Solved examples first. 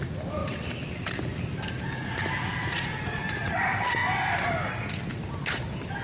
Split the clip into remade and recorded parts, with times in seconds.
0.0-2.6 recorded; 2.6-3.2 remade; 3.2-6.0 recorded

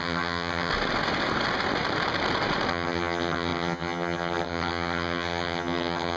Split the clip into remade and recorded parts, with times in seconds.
0.0-0.7 remade; 0.7-2.7 recorded; 2.7-6.2 remade

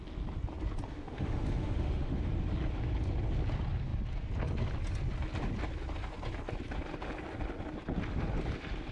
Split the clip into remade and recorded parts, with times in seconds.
0.0-0.9 recorded; 0.9-2.3 remade; 2.3-8.9 recorded

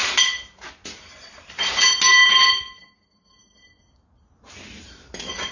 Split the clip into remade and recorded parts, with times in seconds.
0.0-5.5 recorded

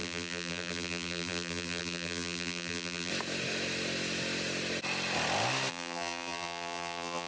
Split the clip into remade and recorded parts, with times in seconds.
0.0-3.1 remade; 3.1-5.7 recorded; 5.7-7.3 remade

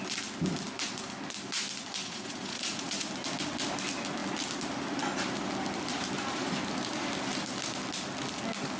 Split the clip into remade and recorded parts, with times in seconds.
0.0-2.0 recorded; 2.0-3.1 remade; 3.1-8.8 recorded

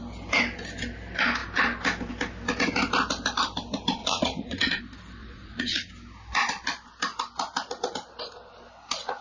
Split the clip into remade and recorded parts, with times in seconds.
0.0-4.0 recorded; 4.0-4.8 remade; 4.8-5.2 recorded; 5.2-5.9 remade; 5.9-9.2 recorded